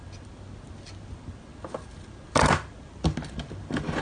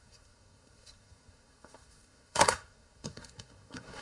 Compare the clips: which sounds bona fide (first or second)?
first